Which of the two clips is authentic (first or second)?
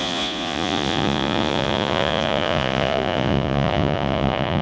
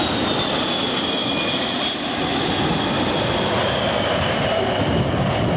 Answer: second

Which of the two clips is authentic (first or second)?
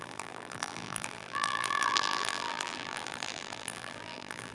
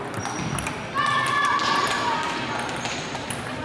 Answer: second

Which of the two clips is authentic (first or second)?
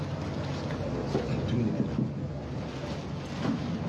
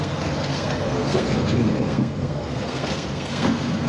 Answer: first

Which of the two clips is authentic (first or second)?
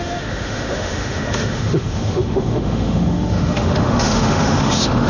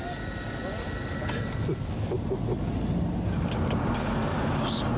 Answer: second